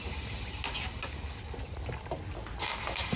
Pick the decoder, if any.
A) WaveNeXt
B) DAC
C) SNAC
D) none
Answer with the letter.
D